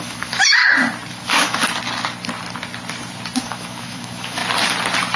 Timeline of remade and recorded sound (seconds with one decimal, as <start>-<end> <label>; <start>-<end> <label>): 0.0-0.6 remade; 0.6-1.1 recorded; 1.1-1.6 remade; 1.6-3.4 recorded; 3.4-4.4 remade; 4.4-5.2 recorded